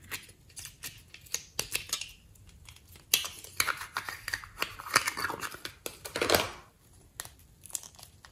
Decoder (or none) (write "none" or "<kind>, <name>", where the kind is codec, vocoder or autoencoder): none